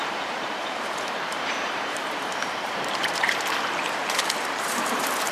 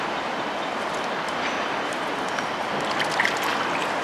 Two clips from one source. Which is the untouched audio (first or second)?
second